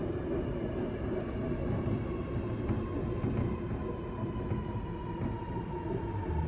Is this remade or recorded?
recorded